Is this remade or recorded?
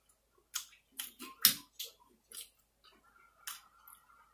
recorded